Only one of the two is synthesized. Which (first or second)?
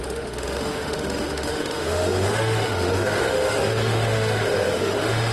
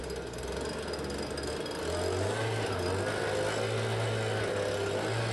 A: first